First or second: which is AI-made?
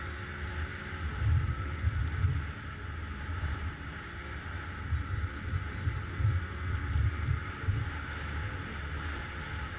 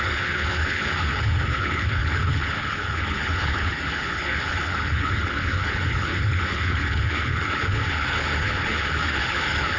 second